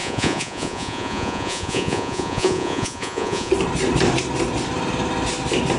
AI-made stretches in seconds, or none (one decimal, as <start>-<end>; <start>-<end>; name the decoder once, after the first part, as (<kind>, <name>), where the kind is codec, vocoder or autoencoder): 0.0-3.5 (vocoder, Vocos)